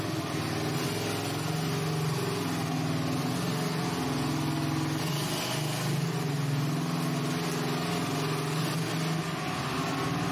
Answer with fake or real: real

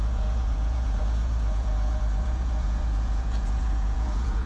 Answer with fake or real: fake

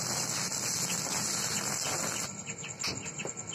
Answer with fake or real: real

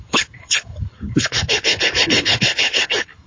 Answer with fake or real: fake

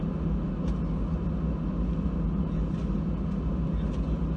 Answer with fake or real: real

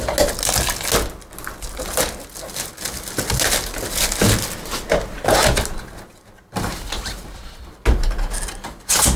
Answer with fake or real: real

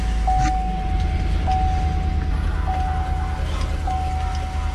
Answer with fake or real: real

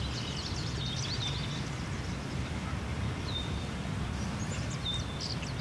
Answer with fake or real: real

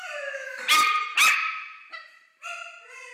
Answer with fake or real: real